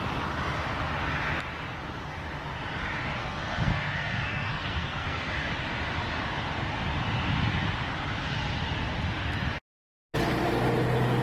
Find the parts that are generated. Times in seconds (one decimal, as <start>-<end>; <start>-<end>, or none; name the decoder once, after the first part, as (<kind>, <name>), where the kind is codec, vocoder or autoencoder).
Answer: 3.2-5.3 (codec, SNAC)

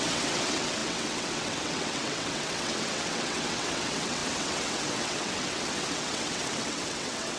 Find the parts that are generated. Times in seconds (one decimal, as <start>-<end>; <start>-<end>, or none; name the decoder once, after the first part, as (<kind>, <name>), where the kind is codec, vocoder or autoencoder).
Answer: 0.0-7.4 (vocoder, WaveNeXt)

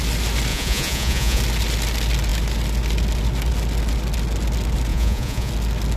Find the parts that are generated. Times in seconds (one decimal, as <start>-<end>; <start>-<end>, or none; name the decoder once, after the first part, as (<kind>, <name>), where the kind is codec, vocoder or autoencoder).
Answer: 0.5-1.4 (vocoder, Vocos); 4.9-5.5

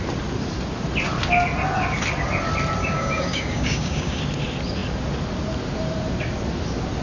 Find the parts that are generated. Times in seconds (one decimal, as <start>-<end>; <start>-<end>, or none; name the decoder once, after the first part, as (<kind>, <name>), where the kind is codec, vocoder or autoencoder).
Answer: 2.8-4.2 (codec, DAC)

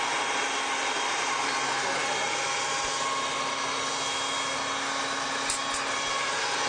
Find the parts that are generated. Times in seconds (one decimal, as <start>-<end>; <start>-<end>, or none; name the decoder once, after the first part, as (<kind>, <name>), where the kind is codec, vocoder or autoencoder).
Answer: none

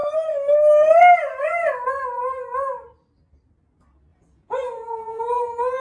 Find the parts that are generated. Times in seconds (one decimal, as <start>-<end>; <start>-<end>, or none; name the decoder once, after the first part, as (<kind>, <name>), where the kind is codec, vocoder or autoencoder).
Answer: 4.1-5.8 (vocoder, Vocos)

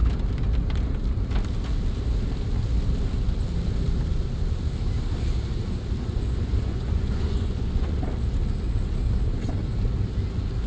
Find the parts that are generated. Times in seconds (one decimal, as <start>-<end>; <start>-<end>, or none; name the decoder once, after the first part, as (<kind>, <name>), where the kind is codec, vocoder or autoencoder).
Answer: 6.0-8.0 (vocoder, Vocos)

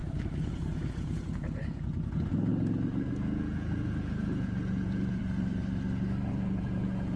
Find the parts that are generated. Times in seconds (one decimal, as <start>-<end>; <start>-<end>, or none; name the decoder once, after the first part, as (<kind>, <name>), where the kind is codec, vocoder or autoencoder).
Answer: 0.0-2.5 (vocoder, Vocos); 3.1-5.2; 6.3-7.2